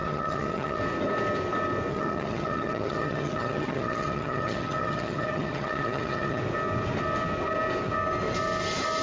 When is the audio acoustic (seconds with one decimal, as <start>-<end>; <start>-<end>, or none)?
0.8-1.9; 6.4-9.0

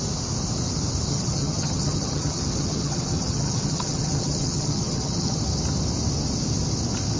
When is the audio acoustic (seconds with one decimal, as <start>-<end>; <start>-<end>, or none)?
0.0-1.1; 5.4-7.2

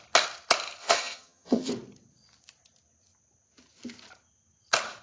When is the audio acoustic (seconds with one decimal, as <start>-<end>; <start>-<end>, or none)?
0.0-0.8; 1.7-5.0

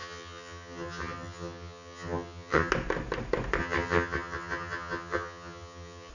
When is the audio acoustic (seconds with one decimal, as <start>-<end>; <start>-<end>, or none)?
2.7-3.6

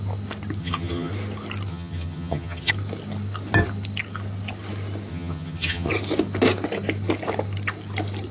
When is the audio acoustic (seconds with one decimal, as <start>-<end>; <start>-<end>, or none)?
0.0-0.6; 1.1-1.7; 2.7-5.1; 5.9-8.3

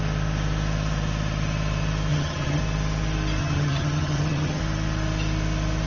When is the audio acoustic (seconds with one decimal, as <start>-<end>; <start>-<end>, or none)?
0.0-2.1; 2.6-3.4; 4.6-5.9